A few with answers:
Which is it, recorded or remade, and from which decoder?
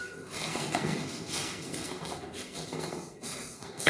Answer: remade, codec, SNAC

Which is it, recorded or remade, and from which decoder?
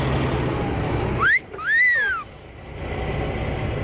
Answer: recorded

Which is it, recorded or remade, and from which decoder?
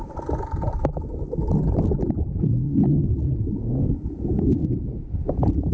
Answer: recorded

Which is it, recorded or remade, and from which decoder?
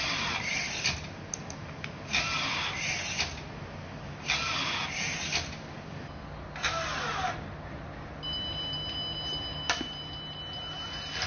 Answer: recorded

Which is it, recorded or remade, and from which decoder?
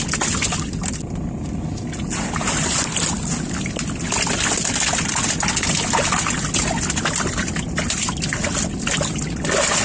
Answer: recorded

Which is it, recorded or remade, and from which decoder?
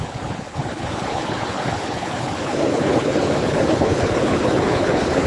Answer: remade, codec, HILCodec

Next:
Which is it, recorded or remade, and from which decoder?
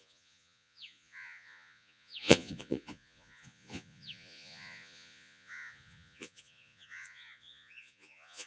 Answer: remade, vocoder, Vocos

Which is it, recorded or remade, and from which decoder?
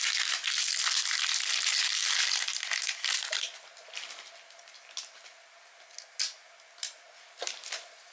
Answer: recorded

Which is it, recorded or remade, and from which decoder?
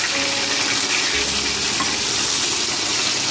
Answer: recorded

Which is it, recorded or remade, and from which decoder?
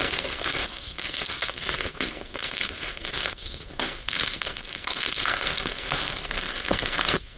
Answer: remade, codec, SNAC